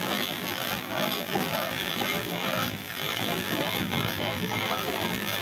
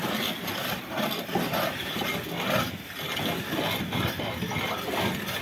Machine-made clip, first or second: first